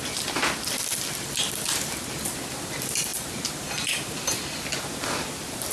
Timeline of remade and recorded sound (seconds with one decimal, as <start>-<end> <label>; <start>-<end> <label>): 0.0-5.7 recorded